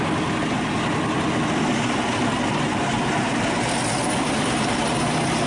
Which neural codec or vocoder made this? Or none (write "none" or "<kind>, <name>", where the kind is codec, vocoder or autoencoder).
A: none